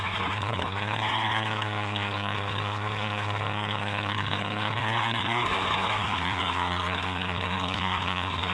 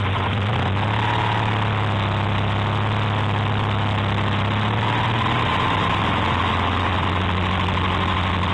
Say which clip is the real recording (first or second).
second